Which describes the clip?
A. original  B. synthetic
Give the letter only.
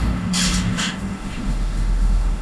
B